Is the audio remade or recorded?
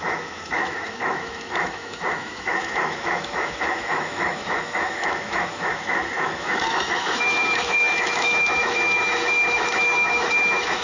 remade